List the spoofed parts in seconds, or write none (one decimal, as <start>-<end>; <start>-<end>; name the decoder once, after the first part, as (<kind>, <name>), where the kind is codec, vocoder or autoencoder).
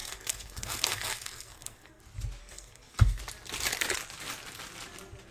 0.0-2.0 (codec, SNAC); 2.4-3.2